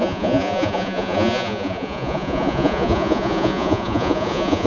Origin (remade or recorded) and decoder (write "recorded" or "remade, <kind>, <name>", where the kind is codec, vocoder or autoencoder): remade, vocoder, Vocos